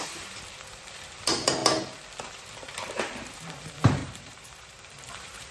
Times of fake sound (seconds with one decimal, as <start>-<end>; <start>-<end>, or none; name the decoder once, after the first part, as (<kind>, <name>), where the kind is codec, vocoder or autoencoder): 0.0-1.6 (vocoder, BigVGAN v2); 2.3-5.5